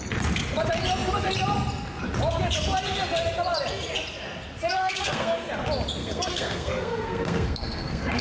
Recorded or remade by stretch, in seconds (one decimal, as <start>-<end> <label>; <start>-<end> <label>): 0.0-4.8 recorded; 4.8-5.5 remade; 5.5-6.0 recorded; 6.0-8.2 remade